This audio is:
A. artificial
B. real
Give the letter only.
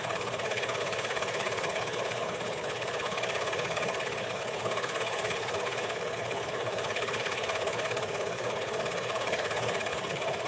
A